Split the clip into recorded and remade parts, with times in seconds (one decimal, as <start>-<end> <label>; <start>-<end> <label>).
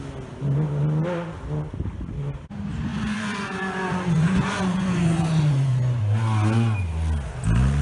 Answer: 0.0-2.9 recorded; 2.9-6.0 remade; 6.0-7.8 recorded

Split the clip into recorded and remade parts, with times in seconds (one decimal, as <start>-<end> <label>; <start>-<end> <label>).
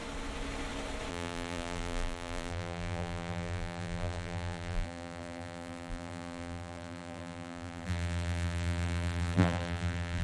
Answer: 0.0-1.1 recorded; 1.1-10.2 remade